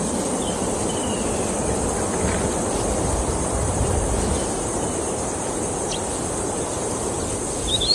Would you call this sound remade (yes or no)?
yes